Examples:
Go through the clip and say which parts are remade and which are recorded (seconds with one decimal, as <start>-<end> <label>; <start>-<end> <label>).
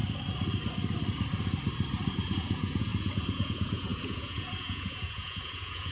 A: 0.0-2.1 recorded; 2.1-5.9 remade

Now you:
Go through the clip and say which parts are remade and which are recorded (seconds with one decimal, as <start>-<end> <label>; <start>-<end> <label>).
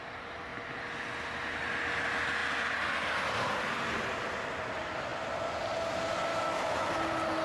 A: 0.0-6.3 recorded; 6.3-6.9 remade; 6.9-7.4 recorded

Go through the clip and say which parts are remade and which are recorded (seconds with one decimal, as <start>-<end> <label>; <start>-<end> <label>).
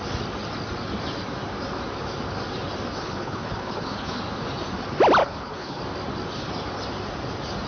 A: 0.0-3.0 recorded; 3.0-4.2 remade; 4.2-5.2 recorded; 5.2-5.8 remade; 5.8-7.7 recorded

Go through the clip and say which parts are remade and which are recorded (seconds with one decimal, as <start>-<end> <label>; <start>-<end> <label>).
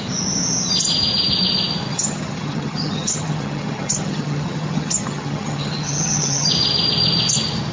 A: 0.0-1.9 recorded; 1.9-6.5 remade; 6.5-7.7 recorded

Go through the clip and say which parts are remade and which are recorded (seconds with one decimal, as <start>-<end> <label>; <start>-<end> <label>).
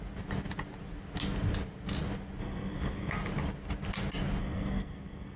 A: 0.0-2.4 recorded; 2.4-3.1 remade; 3.1-4.4 recorded; 4.4-5.4 remade